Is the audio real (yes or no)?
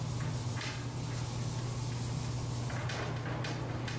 yes